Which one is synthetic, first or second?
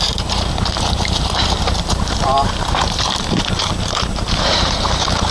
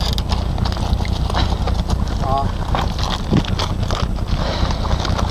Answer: first